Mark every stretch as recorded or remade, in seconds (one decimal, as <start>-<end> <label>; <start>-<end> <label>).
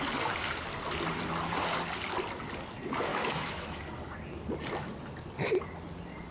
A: 0.0-3.1 recorded; 3.1-3.8 remade; 3.8-6.3 recorded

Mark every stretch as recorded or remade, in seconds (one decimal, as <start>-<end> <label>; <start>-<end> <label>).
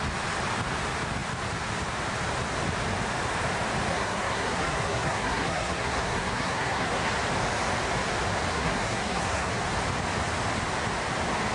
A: 0.0-3.9 recorded; 3.9-7.1 remade; 7.1-8.5 recorded; 8.5-9.5 remade; 9.5-11.5 recorded